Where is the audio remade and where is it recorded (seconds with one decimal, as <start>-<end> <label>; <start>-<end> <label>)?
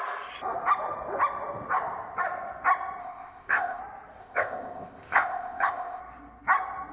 0.0-3.0 recorded; 3.0-3.8 remade; 3.8-4.2 recorded; 4.2-6.0 remade; 6.0-6.9 recorded